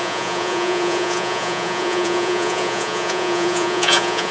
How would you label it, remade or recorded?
remade